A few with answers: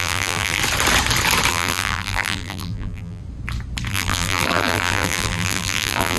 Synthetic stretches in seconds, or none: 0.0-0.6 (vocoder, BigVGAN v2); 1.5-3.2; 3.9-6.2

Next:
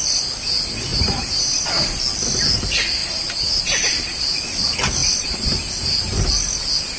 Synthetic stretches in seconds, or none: 0.9-1.9 (vocoder, BigVGAN v2); 3.0-4.2

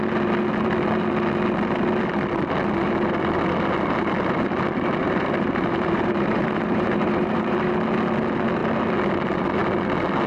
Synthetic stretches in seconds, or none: 5.0-7.7 (vocoder, BigVGAN v2)

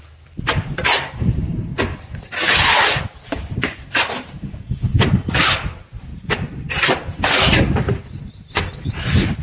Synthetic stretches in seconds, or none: 0.0-1.7 (vocoder, BigVGAN v2); 2.9-6.1; 8.8-9.4

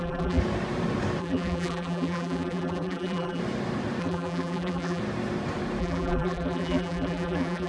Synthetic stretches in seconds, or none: 0.0-0.4 (vocoder, BigVGAN v2); 1.2-3.4; 4.0-5.0; 5.8-7.7

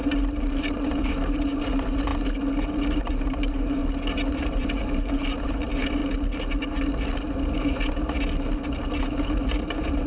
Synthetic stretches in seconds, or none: 0.0-2.1 (vocoder, BigVGAN v2); 3.0-3.8; 4.3-6.0; 9.0-10.1

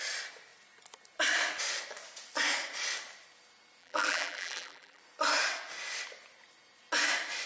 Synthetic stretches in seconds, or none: 3.8-5.0 (vocoder, BigVGAN v2)